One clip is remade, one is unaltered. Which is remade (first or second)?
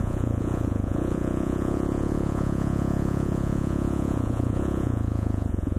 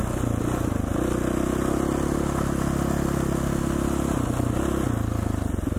first